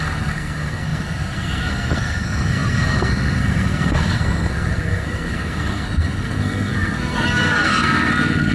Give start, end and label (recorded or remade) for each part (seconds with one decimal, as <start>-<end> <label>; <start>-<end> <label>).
0.0-8.5 remade